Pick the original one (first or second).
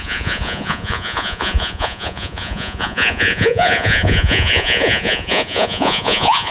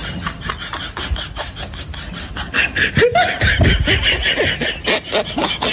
second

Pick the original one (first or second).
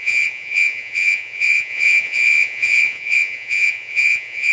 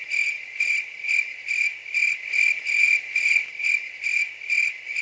second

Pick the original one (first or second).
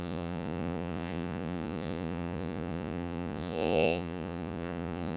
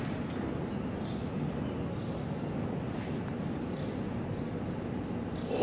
second